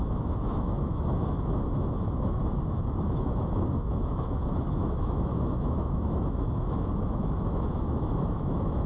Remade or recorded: remade